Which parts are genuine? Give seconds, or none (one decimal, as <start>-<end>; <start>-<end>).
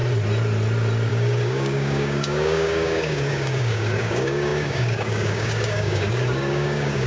0.0-1.1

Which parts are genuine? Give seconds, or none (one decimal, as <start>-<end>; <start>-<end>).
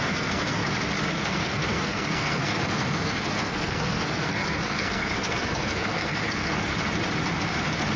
0.6-1.1; 6.7-8.0